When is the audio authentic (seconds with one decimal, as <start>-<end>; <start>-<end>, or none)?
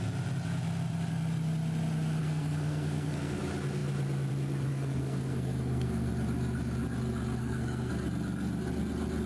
0.0-2.2; 3.4-4.7; 6.1-7.4; 7.9-9.3